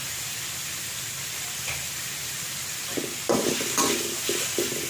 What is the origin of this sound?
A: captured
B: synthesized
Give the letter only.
A